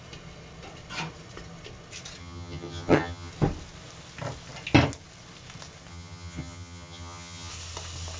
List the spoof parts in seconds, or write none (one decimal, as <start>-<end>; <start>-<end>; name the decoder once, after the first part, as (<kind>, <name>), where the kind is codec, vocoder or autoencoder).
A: 2.2-3.3 (vocoder, HiFi-GAN); 5.9-7.5